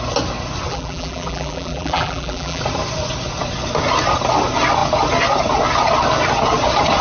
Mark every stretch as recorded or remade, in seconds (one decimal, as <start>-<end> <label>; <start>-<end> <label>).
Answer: 0.0-0.7 recorded; 0.7-2.6 remade; 2.6-7.0 recorded